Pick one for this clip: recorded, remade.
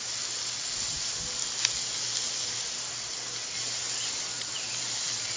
recorded